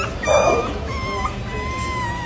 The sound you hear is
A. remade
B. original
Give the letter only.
B